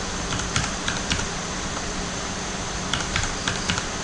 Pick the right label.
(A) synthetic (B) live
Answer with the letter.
A